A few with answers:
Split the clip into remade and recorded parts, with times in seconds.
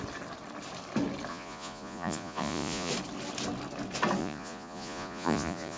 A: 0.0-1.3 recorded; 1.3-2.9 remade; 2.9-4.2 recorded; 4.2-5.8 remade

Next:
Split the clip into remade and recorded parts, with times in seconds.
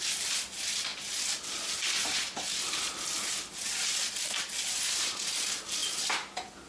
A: 0.0-6.7 recorded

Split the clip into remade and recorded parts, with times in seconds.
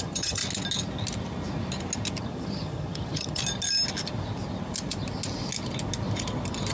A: 0.0-0.4 remade; 0.4-2.2 recorded; 2.2-3.4 remade; 3.4-6.7 recorded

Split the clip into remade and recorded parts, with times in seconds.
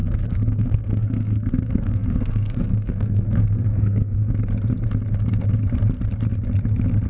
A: 0.0-4.3 remade; 4.3-7.1 recorded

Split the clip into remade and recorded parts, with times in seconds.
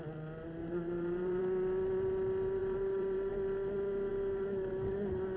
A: 0.0-0.6 recorded; 0.6-1.4 remade; 1.4-2.6 recorded; 2.6-3.3 remade; 3.3-5.4 recorded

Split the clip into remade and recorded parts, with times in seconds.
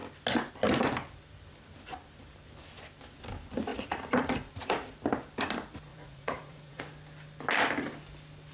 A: 0.0-3.7 recorded; 3.7-4.5 remade; 4.5-5.9 recorded; 5.9-6.8 remade; 6.8-8.5 recorded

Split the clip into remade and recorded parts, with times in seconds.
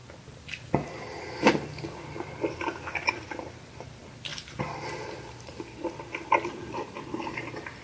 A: 0.0-3.1 recorded; 3.1-4.3 remade; 4.3-5.8 recorded; 5.8-7.8 remade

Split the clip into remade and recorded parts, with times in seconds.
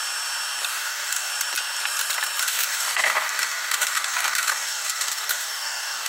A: 0.0-0.7 recorded; 0.7-1.3 remade; 1.3-2.4 recorded; 2.4-6.1 remade